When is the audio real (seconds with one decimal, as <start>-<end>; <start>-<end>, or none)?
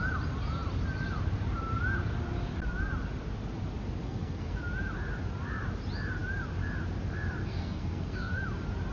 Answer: 0.0-4.0; 4.6-7.4; 8.4-8.9